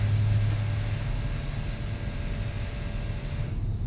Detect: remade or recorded recorded